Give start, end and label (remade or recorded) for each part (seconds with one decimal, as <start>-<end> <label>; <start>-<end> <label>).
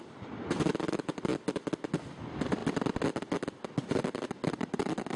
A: 0.0-5.2 recorded